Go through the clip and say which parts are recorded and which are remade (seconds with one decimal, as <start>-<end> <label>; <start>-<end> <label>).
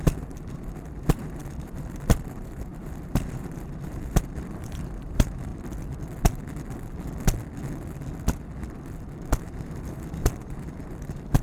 0.0-5.5 remade; 5.5-9.4 recorded; 9.4-11.4 remade